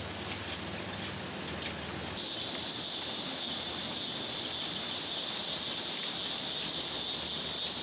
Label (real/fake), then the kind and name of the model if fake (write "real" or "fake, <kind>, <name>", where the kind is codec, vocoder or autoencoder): real